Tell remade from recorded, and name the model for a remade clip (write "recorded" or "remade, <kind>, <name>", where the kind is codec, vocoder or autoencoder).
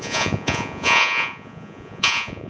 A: remade, vocoder, Vocos